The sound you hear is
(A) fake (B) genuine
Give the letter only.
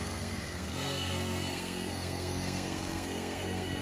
A